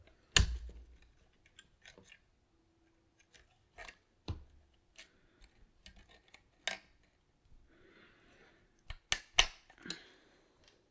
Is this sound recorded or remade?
recorded